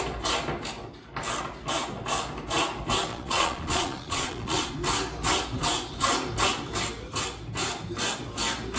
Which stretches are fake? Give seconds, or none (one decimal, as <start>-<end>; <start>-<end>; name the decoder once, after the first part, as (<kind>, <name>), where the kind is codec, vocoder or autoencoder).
3.1-4.7 (vocoder, Vocos)